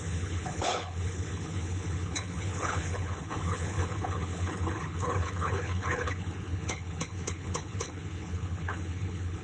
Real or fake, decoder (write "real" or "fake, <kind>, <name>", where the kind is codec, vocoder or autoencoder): fake, codec, HILCodec